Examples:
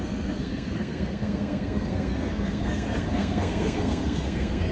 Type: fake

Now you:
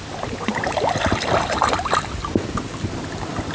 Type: real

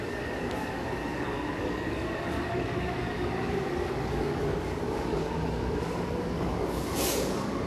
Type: fake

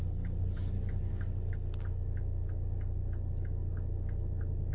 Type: real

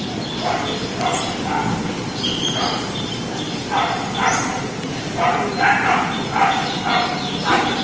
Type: real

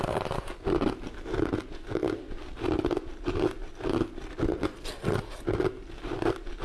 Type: real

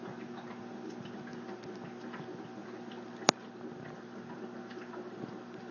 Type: real